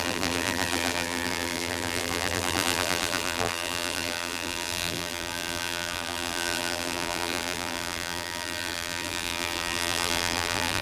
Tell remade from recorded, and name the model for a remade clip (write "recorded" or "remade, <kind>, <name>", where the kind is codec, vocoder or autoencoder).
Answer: remade, vocoder, BigVGAN v2